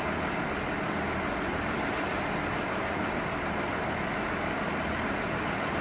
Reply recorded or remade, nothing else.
recorded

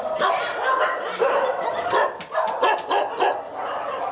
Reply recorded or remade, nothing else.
recorded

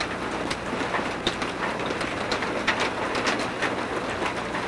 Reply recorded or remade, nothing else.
recorded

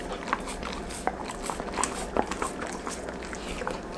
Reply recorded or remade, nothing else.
recorded